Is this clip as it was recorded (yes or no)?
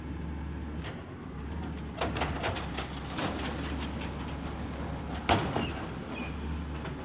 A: yes